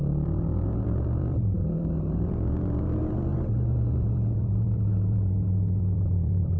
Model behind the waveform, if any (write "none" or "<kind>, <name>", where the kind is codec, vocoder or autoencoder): vocoder, BigVGAN v2